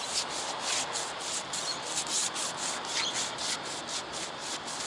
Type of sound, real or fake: real